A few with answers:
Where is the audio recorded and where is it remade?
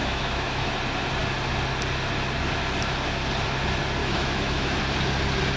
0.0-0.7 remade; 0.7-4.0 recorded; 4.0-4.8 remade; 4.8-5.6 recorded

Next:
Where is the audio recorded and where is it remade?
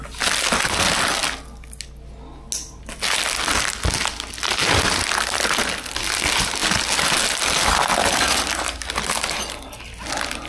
0.0-10.5 recorded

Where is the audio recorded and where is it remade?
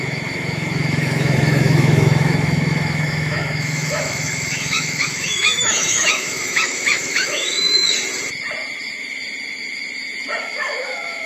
0.0-7.9 remade; 7.9-10.4 recorded; 10.4-11.3 remade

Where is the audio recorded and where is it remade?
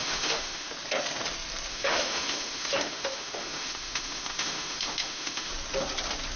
0.0-0.7 remade; 0.7-1.7 recorded; 1.7-5.5 remade; 5.5-6.4 recorded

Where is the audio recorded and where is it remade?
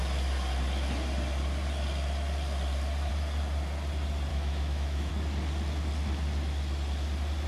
0.0-4.3 recorded; 4.3-5.1 remade; 5.1-7.5 recorded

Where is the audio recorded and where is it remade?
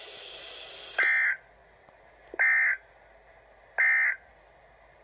0.0-5.0 recorded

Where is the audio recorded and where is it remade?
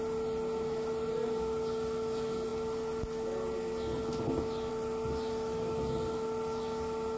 0.0-7.2 recorded